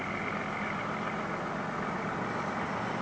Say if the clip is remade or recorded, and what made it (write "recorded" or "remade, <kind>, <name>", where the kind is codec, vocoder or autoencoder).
recorded